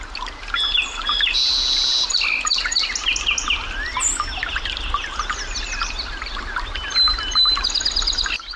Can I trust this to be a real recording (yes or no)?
yes